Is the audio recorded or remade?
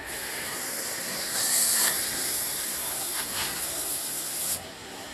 remade